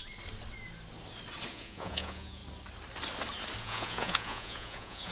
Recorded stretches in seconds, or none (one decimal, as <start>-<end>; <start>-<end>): 0.0-1.5; 2.4-3.6